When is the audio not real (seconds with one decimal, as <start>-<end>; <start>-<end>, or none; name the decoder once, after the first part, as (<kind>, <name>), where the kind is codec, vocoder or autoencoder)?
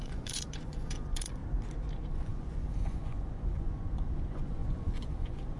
0.0-1.4 (vocoder, Vocos); 2.1-5.6